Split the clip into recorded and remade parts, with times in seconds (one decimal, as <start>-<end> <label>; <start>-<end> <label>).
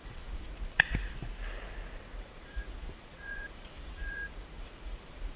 0.0-1.1 remade; 1.1-2.1 recorded; 2.1-5.4 remade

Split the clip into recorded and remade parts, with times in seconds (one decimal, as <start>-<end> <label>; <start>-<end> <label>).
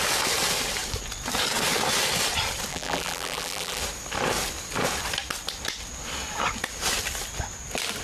0.0-2.7 recorded; 2.7-3.8 remade; 3.8-8.0 recorded